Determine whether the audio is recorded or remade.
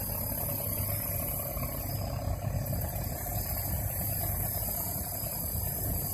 recorded